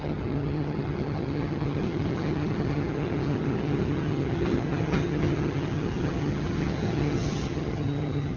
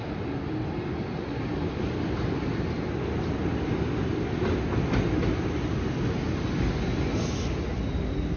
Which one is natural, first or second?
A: second